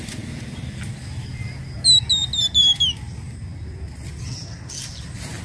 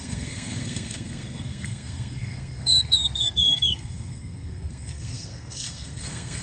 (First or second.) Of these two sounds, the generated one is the second